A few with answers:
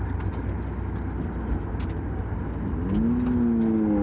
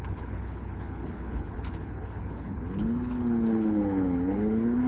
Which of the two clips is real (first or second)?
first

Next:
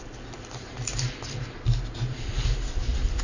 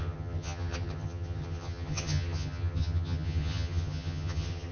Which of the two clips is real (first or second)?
first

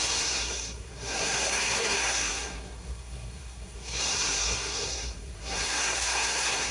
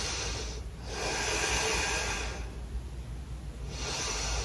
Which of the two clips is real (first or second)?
second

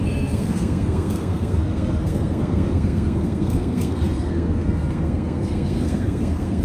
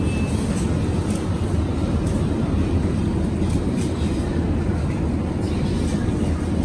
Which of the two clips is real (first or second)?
second